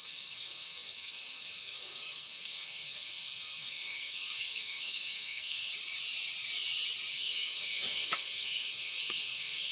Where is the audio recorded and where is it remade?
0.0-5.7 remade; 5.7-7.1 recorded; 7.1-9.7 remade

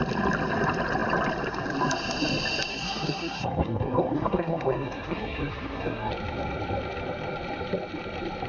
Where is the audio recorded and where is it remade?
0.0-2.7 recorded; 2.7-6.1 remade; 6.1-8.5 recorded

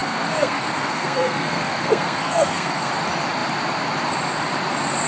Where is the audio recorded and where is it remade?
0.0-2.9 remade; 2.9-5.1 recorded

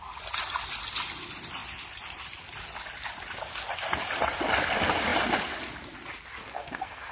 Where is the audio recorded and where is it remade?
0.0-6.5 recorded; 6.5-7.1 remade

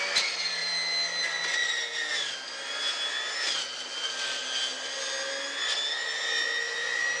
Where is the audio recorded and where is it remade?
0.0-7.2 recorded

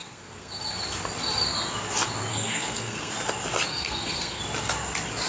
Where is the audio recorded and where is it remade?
0.0-0.5 remade; 0.5-2.3 recorded; 2.3-3.1 remade; 3.1-3.7 recorded; 3.7-4.4 remade; 4.4-5.3 recorded

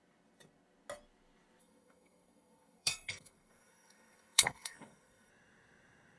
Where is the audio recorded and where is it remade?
0.0-1.6 recorded; 1.6-5.3 remade; 5.3-6.2 recorded

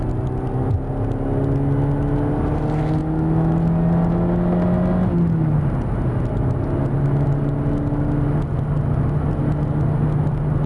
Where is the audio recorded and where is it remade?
0.0-10.7 recorded